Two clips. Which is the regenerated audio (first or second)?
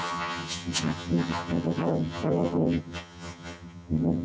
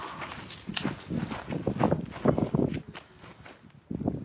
first